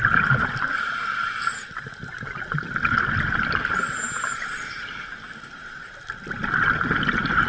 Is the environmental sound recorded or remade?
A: recorded